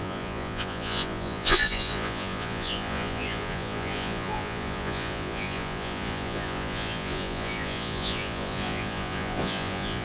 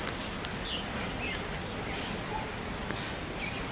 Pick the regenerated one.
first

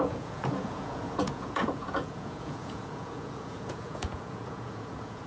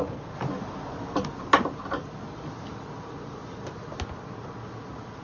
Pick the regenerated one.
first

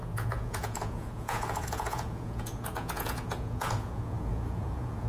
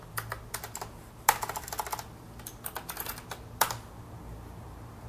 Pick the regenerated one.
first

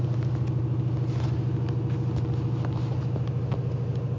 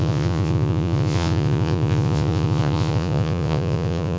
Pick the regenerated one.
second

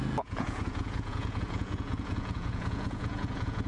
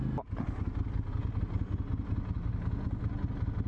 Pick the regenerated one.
first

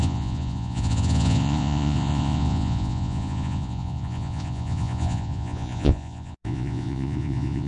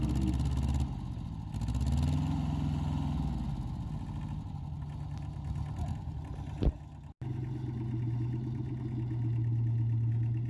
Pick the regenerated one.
first